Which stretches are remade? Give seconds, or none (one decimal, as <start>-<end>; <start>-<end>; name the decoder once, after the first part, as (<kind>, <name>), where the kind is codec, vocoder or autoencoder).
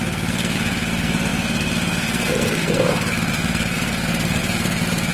0.0-5.1 (codec, SNAC)